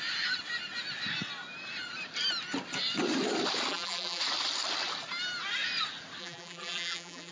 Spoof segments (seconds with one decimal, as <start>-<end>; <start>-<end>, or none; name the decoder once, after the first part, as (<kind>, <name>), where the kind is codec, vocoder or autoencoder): 3.7-4.2 (vocoder, BigVGAN v2); 6.2-7.3